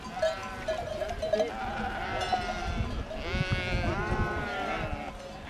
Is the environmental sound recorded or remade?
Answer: recorded